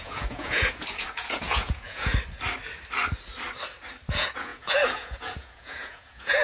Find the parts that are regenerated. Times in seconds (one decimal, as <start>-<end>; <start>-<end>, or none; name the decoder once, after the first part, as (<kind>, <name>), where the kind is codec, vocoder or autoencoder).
0.0-2.1 (vocoder, Vocos); 4.1-6.4

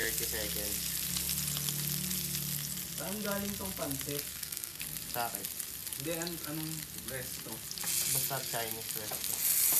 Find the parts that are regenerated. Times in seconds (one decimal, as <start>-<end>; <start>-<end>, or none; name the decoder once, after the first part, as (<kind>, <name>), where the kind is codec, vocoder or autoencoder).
4.3-4.8 (codec, SNAC)

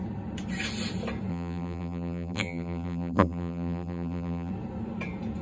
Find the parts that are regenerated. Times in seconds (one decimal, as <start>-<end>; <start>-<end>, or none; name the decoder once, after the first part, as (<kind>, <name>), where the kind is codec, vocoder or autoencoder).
1.3-4.5 (vocoder, BigVGAN v2)

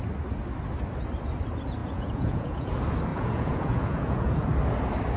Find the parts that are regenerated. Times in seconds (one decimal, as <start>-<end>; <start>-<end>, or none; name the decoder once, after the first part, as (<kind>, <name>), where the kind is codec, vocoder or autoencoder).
1.8-2.7 (vocoder, Vocos); 3.1-4.5

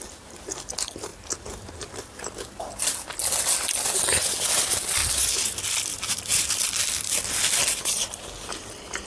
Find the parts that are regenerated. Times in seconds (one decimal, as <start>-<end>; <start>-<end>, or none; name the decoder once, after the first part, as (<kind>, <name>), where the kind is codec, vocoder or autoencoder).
none

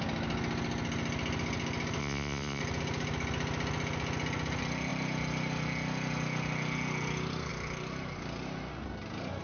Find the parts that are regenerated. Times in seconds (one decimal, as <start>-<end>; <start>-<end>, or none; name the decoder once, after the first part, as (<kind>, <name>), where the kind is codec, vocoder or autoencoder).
2.0-2.6 (vocoder, Vocos)

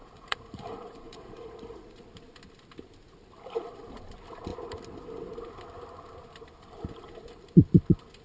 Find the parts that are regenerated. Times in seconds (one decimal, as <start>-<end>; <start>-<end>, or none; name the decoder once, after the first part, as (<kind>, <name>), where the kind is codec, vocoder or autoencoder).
0.0-2.0 (vocoder, Vocos)

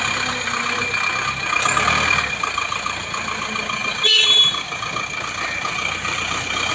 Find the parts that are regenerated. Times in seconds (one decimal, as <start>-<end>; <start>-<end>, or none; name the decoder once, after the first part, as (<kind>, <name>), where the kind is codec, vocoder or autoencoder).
none